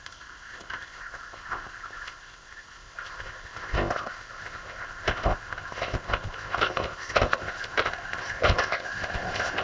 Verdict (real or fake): fake